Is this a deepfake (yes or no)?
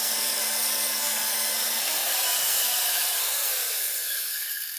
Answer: yes